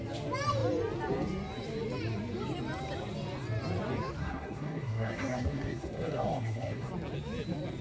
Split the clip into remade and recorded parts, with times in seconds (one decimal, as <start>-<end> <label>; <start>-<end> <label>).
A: 0.0-4.2 recorded; 4.2-6.9 remade; 6.9-7.8 recorded